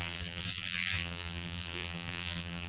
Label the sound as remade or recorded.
remade